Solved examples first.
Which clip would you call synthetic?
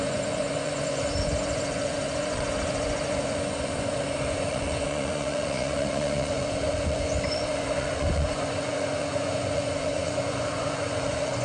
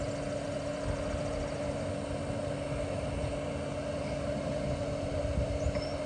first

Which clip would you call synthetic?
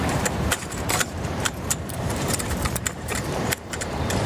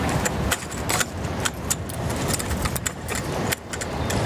first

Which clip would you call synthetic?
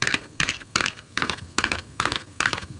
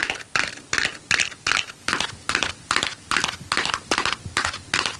first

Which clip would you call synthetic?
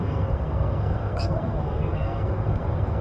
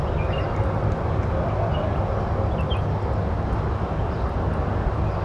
first